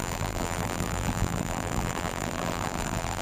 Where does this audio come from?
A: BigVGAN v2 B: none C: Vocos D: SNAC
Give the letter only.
A